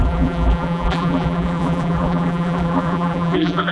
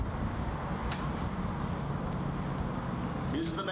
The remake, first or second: first